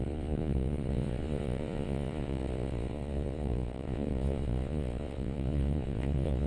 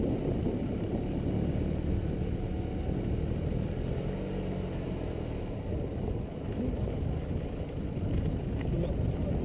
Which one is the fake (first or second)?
first